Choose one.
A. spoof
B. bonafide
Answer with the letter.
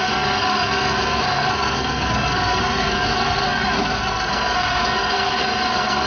A